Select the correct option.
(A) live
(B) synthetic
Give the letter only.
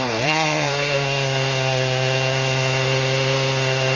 B